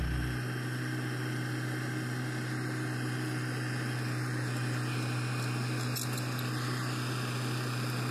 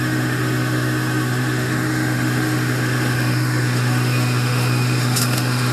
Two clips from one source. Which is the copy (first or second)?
second